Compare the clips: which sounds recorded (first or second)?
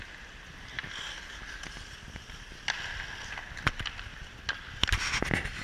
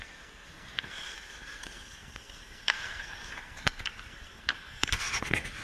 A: first